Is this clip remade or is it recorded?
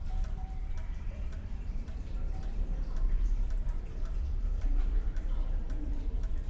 remade